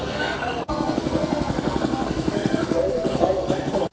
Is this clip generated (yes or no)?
yes